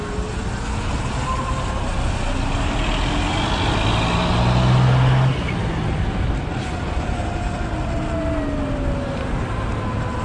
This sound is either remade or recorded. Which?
recorded